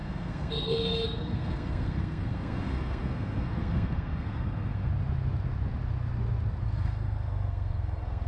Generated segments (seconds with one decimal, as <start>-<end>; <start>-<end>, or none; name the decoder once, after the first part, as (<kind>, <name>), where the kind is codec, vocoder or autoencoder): 0.0-4.9 (codec, SNAC); 6.6-8.3